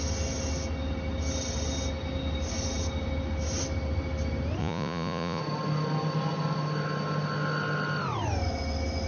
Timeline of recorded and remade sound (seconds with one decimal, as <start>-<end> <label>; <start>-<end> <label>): 0.0-4.6 recorded; 4.6-5.4 remade; 5.4-9.1 recorded